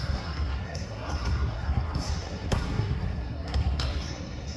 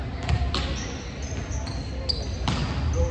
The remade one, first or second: first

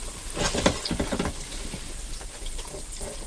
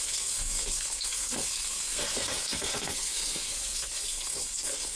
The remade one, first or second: second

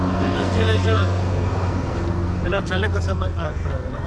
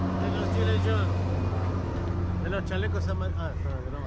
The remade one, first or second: first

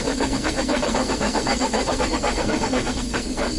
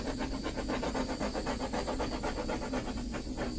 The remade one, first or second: first